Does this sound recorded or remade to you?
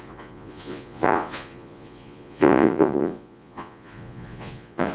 remade